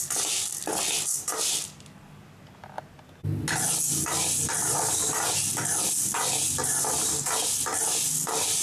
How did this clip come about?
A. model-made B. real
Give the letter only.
B